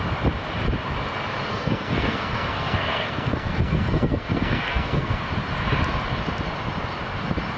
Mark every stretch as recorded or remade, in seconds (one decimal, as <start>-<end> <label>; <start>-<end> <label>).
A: 0.0-1.5 recorded; 1.5-5.3 remade; 5.3-7.6 recorded